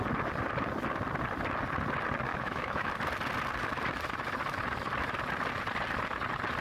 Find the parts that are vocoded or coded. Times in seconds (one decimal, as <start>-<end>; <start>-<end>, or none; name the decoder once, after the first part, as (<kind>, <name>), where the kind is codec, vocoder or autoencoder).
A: 2.3-2.9 (autoencoder, DAC-VAE)